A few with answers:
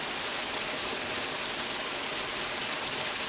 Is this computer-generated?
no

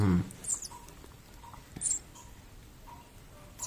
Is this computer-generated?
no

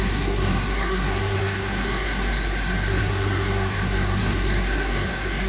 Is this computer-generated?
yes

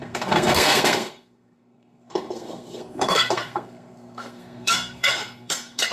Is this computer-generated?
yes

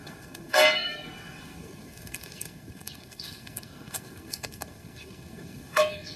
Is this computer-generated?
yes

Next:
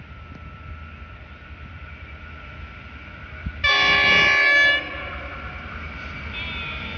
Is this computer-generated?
no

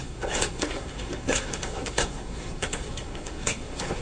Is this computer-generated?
yes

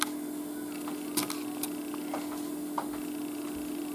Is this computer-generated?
no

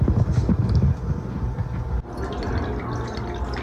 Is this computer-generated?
no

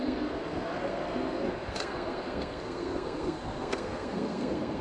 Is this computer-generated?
yes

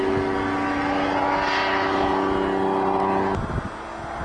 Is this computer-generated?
no